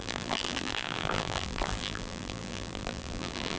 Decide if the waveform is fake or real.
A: fake